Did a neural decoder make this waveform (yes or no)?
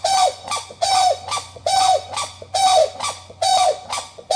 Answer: yes